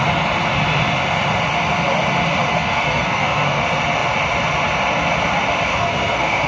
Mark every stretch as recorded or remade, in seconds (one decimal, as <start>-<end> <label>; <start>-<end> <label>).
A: 0.0-2.6 recorded; 2.6-3.6 remade; 3.6-5.7 recorded; 5.7-6.5 remade